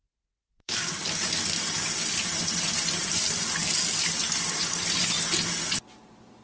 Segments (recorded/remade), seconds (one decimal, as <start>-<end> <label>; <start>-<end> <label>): 0.0-0.9 remade; 0.9-6.4 recorded